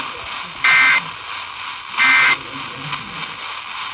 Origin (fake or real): real